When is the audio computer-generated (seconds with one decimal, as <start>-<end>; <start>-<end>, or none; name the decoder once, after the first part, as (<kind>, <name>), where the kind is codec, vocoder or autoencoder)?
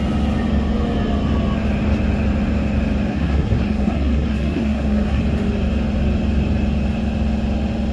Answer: 3.1-5.2 (codec, SNAC)